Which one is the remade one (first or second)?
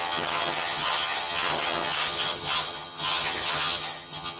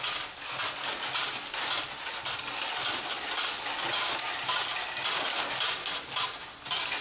first